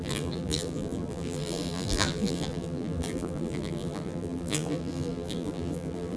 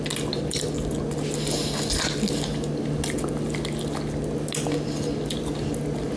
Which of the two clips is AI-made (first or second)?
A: first